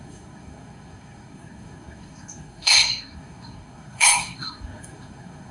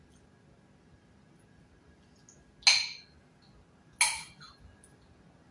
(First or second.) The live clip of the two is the second